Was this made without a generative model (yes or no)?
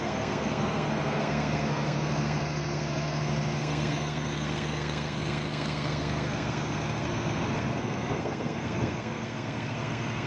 no